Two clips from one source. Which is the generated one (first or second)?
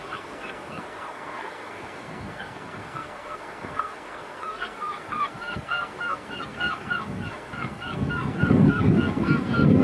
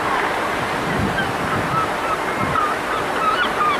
first